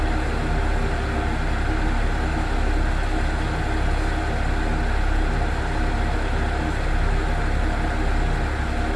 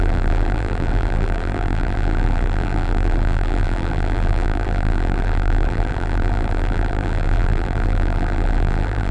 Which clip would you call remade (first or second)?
second